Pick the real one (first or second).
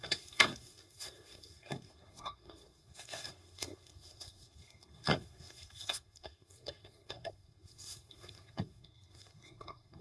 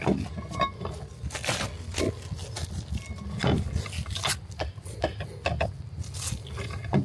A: second